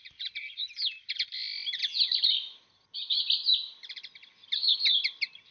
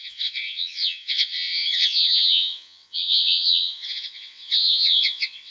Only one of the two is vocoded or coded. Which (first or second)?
second